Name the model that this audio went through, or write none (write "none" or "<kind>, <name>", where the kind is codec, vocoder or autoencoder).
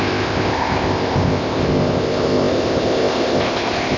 codec, ZipCodec